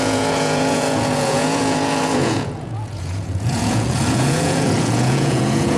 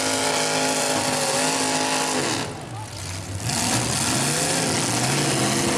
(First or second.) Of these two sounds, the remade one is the first